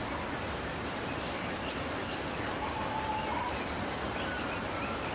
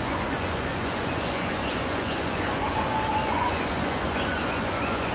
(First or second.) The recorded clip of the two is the first